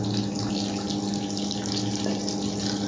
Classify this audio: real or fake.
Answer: real